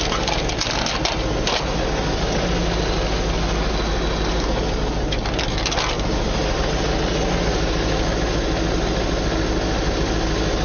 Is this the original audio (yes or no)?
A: yes